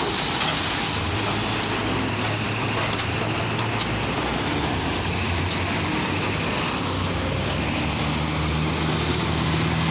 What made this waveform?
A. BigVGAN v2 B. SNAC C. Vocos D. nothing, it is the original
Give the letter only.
D